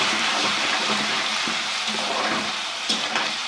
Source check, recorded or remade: remade